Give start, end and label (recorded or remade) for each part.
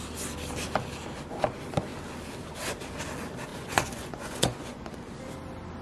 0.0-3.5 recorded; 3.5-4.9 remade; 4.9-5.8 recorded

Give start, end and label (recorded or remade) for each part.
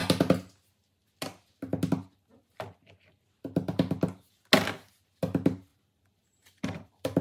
0.0-5.7 recorded; 5.7-7.2 remade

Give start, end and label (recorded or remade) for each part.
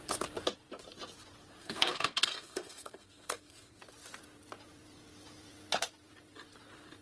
0.0-1.6 recorded; 1.6-3.8 remade; 3.8-7.0 recorded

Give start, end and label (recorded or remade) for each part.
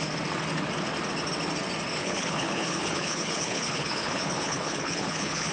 0.0-2.0 recorded; 2.0-5.5 remade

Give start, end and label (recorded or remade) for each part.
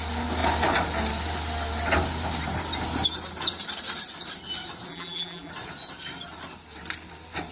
0.0-4.9 recorded; 4.9-5.5 remade; 5.5-7.5 recorded